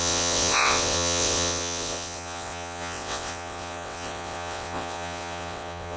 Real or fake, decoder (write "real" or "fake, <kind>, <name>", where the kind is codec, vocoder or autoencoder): fake, vocoder, WaveNeXt